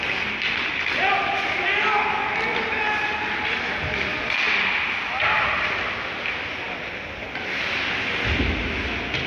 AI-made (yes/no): no